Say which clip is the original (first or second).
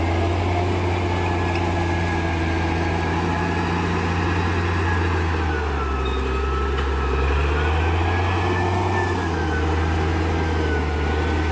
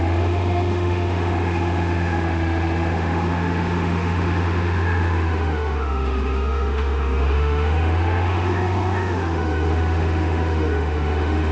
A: first